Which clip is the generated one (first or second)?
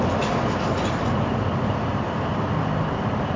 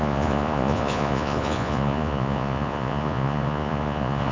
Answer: second